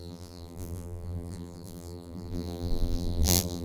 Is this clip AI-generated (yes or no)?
yes